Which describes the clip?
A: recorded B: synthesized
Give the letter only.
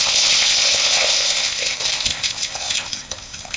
B